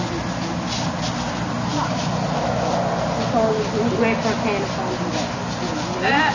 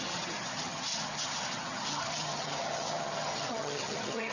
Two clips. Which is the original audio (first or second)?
first